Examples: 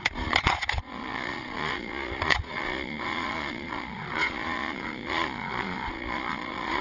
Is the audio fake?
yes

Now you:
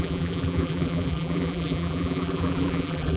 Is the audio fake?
yes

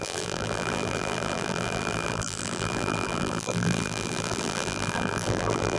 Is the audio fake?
yes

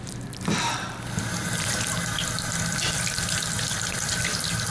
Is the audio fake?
no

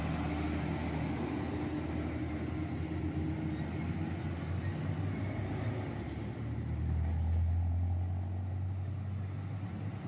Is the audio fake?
no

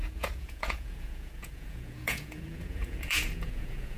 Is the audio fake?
yes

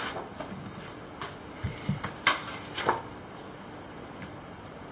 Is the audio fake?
no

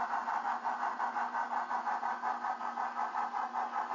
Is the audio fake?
no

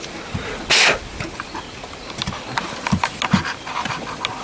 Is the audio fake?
no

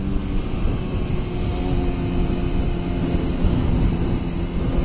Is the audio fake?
no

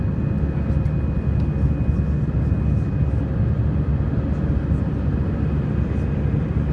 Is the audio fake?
no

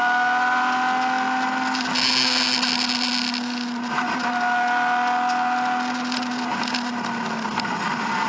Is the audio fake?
no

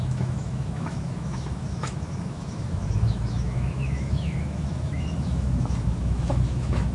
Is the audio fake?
yes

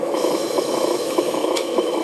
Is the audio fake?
yes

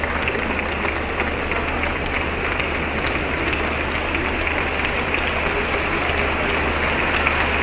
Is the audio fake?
no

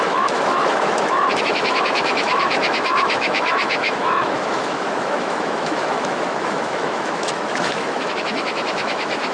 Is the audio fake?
yes